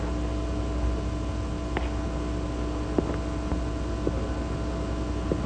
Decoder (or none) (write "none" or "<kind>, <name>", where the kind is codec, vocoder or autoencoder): none